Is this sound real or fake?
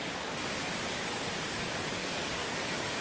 fake